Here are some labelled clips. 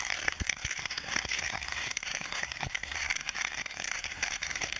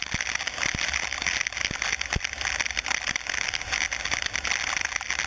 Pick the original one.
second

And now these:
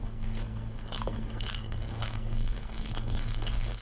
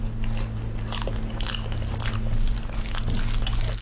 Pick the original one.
second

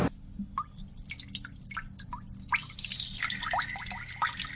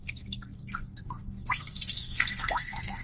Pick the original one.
first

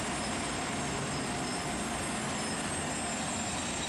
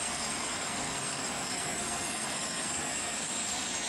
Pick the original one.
first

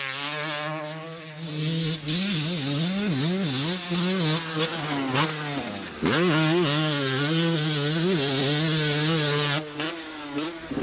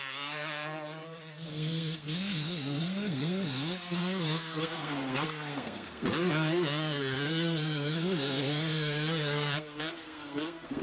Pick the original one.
first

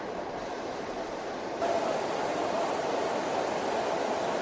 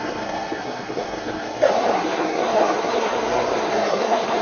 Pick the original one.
first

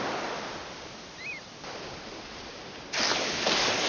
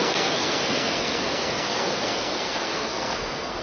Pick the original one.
first